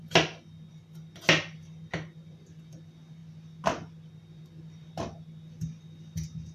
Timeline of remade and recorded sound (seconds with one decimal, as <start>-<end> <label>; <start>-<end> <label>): 0.0-6.5 recorded